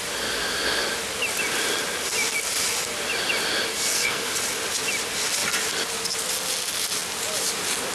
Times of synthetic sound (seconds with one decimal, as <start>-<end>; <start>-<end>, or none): 3.7-4.3